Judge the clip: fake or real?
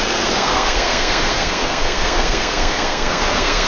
fake